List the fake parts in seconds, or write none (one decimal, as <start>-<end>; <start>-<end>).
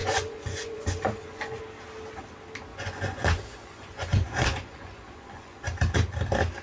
0.0-1.6; 2.7-5.6